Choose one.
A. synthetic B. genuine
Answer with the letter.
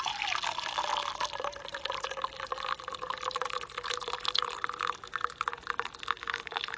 B